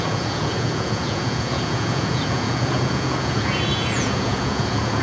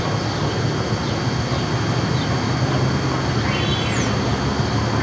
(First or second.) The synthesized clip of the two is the first